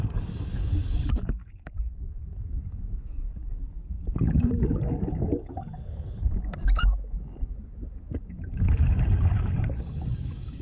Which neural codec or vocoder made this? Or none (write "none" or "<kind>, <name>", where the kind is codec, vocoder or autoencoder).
codec, DAC